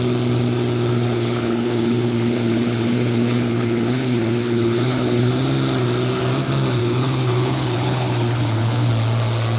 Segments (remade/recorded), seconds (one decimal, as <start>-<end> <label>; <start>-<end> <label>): 0.0-0.9 recorded; 0.9-5.3 remade; 5.3-6.8 recorded; 6.8-8.9 remade; 8.9-9.6 recorded